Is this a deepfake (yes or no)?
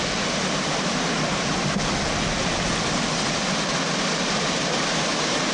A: no